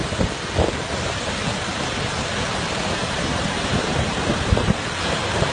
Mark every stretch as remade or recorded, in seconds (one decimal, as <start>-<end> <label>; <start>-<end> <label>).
0.0-3.0 recorded; 3.0-4.7 remade; 4.7-5.5 recorded